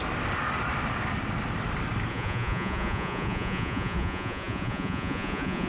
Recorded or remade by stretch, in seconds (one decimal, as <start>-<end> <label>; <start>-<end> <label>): 0.0-2.1 recorded; 2.1-5.7 remade